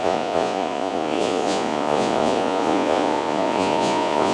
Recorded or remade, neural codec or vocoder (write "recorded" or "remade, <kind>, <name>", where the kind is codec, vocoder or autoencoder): remade, vocoder, Vocos